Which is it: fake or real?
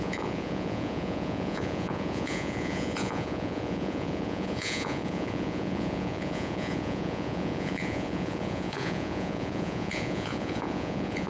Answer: fake